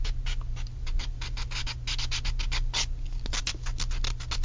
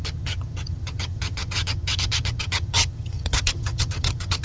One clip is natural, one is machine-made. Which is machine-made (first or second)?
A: second